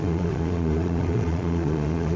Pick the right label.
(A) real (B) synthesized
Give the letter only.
B